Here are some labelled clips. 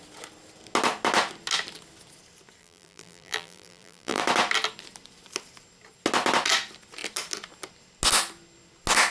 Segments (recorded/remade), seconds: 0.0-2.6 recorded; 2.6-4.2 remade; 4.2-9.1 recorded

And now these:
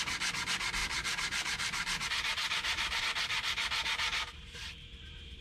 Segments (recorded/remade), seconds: 0.0-0.8 recorded; 0.8-3.0 remade; 3.0-3.8 recorded; 3.8-5.4 remade

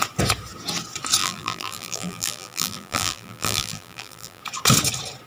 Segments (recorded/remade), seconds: 0.0-1.2 recorded; 1.2-4.4 remade; 4.4-5.3 recorded

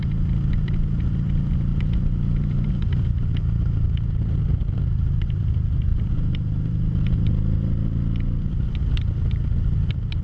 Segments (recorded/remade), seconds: 0.0-1.7 recorded; 1.7-3.1 remade; 3.1-4.6 recorded; 4.6-5.4 remade; 5.4-5.9 recorded; 5.9-7.3 remade; 7.3-10.2 recorded

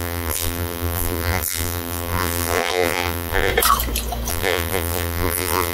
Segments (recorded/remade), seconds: 0.0-3.5 remade; 3.5-4.3 recorded; 4.3-5.7 remade

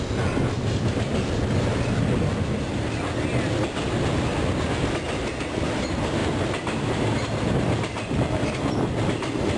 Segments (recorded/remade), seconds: 0.0-6.2 recorded; 6.2-8.8 remade; 8.8-9.6 recorded